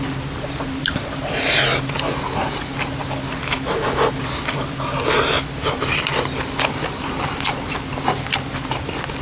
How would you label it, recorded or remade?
recorded